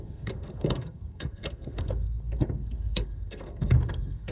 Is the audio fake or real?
fake